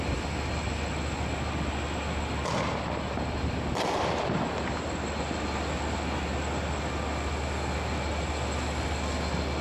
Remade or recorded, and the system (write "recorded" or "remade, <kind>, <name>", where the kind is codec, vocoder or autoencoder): recorded